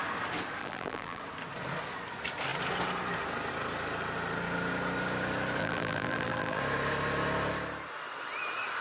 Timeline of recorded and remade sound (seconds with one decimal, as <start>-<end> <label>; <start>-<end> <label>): 0.0-0.6 recorded; 0.6-1.2 remade; 1.2-5.6 recorded; 5.6-6.6 remade; 6.6-8.8 recorded